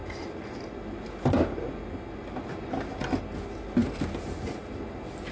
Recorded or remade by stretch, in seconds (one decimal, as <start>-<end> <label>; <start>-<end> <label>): 0.0-5.3 recorded